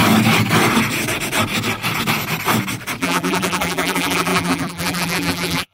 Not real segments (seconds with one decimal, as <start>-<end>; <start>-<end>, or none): 3.0-5.7